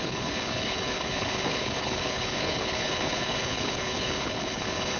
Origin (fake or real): fake